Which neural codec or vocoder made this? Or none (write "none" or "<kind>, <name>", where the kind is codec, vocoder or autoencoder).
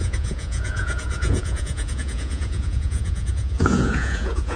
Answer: vocoder, Vocos